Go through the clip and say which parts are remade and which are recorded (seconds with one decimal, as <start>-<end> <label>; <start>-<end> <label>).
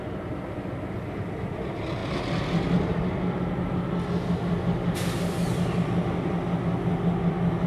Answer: 0.0-7.7 recorded